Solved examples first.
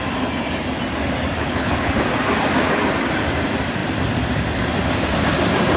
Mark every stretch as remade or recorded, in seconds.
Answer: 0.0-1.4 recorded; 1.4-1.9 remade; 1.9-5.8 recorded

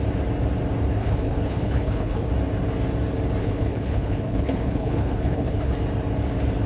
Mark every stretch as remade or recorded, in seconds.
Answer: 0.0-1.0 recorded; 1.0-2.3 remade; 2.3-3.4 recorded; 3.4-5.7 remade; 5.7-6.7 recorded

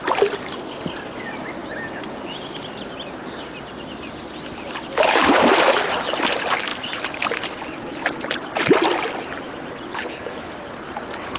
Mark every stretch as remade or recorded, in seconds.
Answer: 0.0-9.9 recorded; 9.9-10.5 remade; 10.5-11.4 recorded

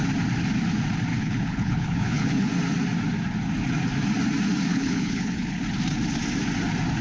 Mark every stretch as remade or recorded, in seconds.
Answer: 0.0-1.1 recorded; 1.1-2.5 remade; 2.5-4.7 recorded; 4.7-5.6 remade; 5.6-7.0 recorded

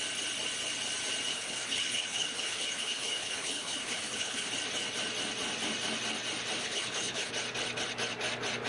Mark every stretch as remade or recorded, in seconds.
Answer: 0.0-1.3 recorded; 1.3-4.5 remade; 4.5-6.6 recorded; 6.6-7.3 remade; 7.3-8.7 recorded

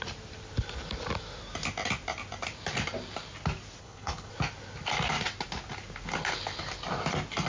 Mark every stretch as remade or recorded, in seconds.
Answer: 0.0-3.8 recorded; 3.8-4.3 remade; 4.3-7.5 recorded

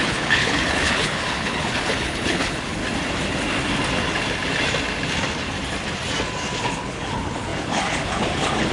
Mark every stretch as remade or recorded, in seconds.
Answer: 0.0-2.8 remade; 2.8-6.6 recorded; 6.6-8.7 remade

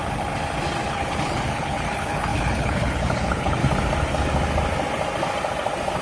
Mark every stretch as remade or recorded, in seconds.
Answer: 0.0-0.9 recorded; 0.9-3.6 remade; 3.6-6.0 recorded